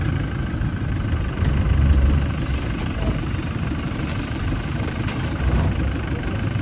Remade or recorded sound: remade